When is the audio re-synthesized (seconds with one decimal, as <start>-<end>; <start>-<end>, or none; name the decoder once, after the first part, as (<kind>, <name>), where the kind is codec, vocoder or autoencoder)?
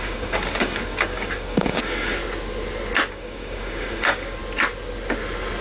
0.0-2.2 (codec, DAC); 3.1-4.4